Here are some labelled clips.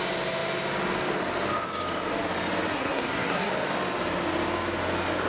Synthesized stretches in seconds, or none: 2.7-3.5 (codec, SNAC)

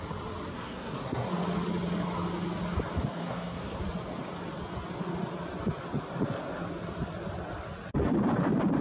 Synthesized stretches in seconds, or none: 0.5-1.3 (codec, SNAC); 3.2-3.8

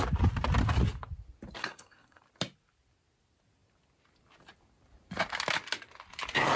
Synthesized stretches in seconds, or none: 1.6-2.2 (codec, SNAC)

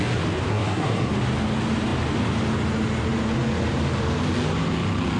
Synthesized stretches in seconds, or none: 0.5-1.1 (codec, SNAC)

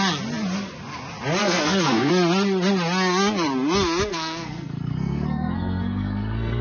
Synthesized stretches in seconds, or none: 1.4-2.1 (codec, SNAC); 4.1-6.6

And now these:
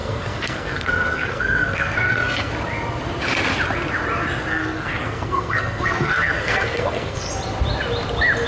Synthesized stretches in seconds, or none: 0.0-2.5 (codec, SNAC); 4.5-7.3